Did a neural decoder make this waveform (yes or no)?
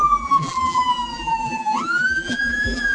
yes